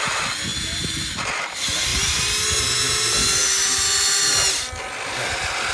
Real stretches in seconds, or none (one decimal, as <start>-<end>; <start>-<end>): 0.0-5.7